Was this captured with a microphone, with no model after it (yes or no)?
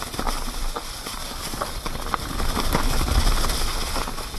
yes